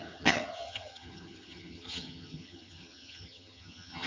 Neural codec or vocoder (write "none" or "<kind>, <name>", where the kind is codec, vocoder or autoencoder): vocoder, HiFi-GAN